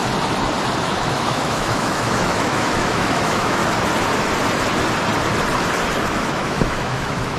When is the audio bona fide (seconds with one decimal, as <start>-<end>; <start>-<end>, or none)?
0.0-0.8; 3.6-6.1